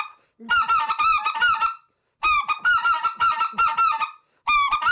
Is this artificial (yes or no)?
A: no